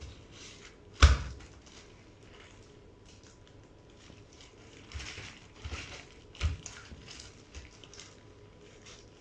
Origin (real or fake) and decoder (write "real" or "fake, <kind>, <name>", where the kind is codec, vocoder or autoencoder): real